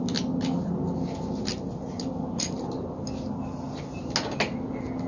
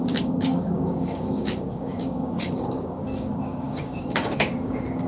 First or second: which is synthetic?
second